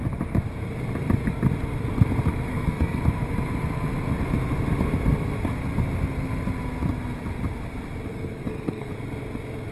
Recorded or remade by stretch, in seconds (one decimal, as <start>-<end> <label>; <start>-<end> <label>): 0.0-2.5 recorded; 2.5-3.0 remade; 3.0-8.1 recorded; 8.1-8.9 remade; 8.9-9.7 recorded